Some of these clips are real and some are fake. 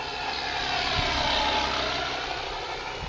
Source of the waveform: real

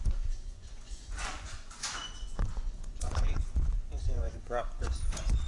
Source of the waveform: fake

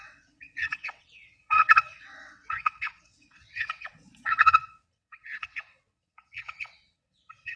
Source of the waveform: fake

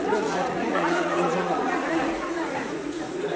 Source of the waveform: fake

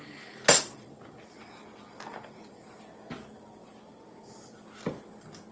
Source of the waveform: real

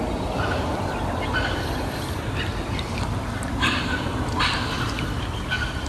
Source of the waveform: real